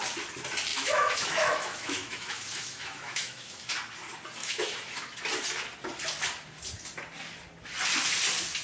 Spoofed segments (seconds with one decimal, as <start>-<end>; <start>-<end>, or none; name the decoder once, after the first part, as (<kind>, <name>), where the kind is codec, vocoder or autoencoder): 0.7-3.7 (autoencoder, DAC-VAE); 4.4-5.2